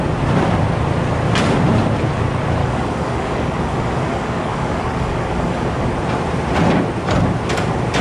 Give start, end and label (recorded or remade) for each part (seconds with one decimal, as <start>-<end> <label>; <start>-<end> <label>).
0.0-2.6 recorded; 2.6-5.9 remade; 5.9-8.0 recorded